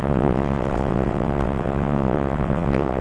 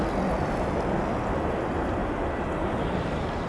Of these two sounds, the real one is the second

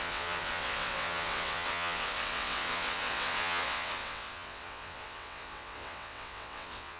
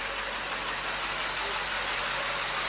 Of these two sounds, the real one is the second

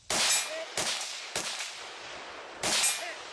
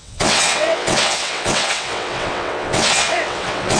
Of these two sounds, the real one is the first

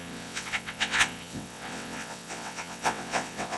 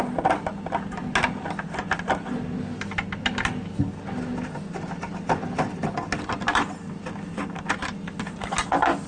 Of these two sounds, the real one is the second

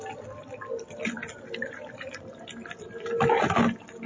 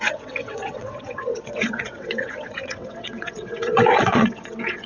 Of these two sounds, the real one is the first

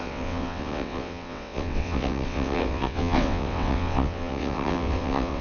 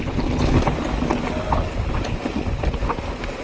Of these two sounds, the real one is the second